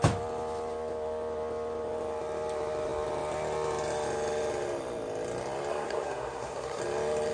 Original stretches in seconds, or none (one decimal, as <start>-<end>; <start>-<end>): 0.0-5.7; 6.8-7.3

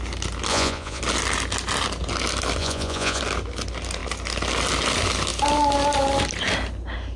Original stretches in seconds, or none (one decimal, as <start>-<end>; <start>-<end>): 0.0-0.5; 1.0-2.6; 3.2-7.2

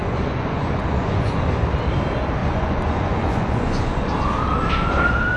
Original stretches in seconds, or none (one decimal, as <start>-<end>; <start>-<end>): 1.4-2.4; 4.0-5.4

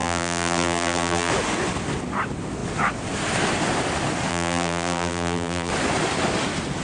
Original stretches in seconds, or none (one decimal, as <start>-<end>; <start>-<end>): 1.3-4.3; 5.7-6.8

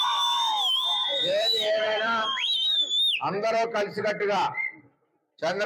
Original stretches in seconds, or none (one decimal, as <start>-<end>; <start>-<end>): 2.8-3.3

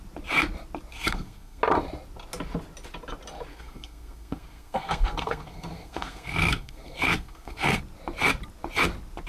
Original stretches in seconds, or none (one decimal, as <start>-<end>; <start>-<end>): 0.0-0.9; 1.6-3.5; 7.8-9.3

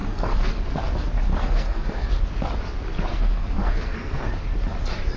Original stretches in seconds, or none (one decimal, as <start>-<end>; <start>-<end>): 0.6-1.3; 2.1-3.1; 4.3-5.2

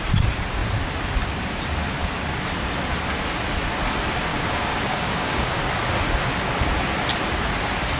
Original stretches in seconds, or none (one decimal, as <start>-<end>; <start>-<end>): 0.0-4.3; 5.6-8.0